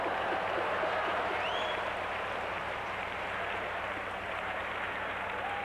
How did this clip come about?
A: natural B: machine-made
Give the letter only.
B